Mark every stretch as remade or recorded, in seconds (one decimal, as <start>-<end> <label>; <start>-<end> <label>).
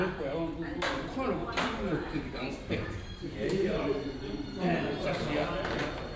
0.0-1.4 recorded; 1.4-5.1 remade; 5.1-6.2 recorded